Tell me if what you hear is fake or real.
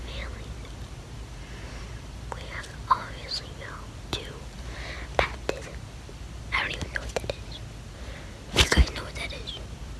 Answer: real